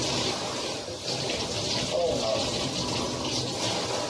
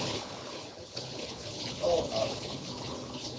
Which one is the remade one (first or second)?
second